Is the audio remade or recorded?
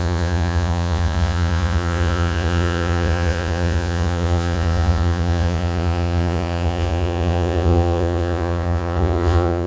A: remade